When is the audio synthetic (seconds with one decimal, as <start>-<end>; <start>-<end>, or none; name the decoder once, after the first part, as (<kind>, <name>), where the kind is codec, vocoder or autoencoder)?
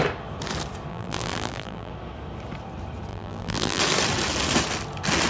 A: 0.9-1.9 (vocoder, BigVGAN v2); 3.1-3.8